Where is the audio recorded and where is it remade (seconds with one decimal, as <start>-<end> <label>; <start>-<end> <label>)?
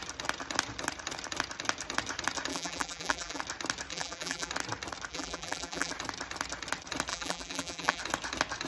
0.0-2.5 recorded; 2.5-3.4 remade; 3.4-3.9 recorded; 3.9-4.5 remade; 4.5-5.1 recorded; 5.1-5.9 remade; 5.9-7.1 recorded; 7.1-8.0 remade; 8.0-8.7 recorded